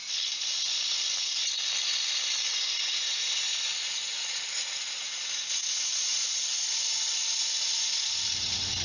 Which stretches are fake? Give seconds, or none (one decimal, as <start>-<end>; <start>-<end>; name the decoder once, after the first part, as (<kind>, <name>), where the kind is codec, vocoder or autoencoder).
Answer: 2.5-8.8 (vocoder, Vocos)